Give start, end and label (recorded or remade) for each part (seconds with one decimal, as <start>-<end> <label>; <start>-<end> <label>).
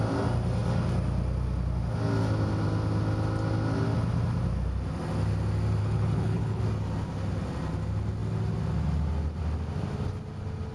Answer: 0.0-5.8 recorded; 5.8-6.6 remade; 6.6-10.7 recorded